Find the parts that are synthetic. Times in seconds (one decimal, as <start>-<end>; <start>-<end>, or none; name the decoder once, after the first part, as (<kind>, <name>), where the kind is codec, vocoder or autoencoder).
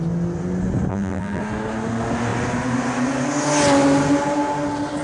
0.9-1.4 (vocoder, BigVGAN v2)